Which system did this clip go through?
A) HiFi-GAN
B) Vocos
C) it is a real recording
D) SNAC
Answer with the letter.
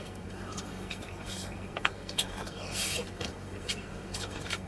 D